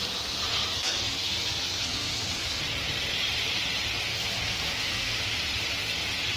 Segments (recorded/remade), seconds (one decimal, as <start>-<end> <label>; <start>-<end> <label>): 0.0-0.5 recorded; 0.5-2.6 remade; 2.6-4.1 recorded; 4.1-5.2 remade; 5.2-6.4 recorded